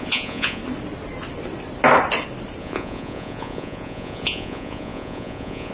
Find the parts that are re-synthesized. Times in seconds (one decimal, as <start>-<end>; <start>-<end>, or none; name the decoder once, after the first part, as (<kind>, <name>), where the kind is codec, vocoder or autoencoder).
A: 0.0-0.6 (vocoder, Vocos); 2.6-5.7